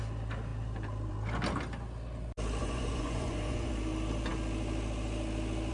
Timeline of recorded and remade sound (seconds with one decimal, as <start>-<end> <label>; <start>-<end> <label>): 0.0-2.6 recorded; 2.6-3.7 remade; 3.7-5.7 recorded